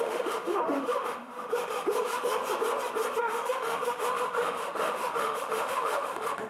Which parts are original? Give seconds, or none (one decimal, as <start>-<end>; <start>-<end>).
2.4-3.2